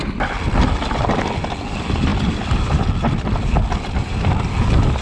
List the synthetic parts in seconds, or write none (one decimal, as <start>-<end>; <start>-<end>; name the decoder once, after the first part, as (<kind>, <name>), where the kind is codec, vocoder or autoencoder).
2.1-4.5 (vocoder, BigVGAN v2)